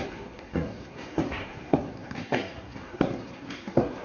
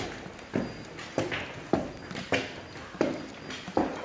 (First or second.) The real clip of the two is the second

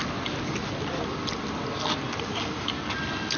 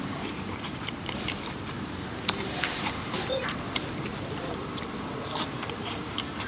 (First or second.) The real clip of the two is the first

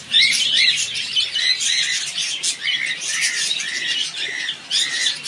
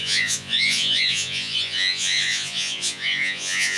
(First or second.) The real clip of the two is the first